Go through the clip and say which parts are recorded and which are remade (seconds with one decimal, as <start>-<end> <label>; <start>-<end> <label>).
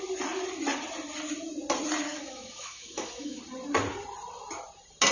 0.0-2.1 recorded; 2.1-3.4 remade; 3.4-5.1 recorded